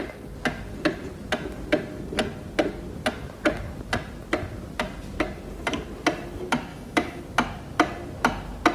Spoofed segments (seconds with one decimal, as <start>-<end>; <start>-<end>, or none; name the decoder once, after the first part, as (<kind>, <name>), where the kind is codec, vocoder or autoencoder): 6.7-7.2 (autoencoder, DAC-VAE)